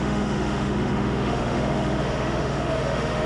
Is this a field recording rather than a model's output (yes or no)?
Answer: no